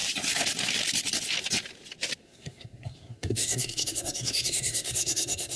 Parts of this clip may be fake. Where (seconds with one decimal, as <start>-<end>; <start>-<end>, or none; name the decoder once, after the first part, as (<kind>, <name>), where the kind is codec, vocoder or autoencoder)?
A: 2.2-5.6 (codec, SNAC)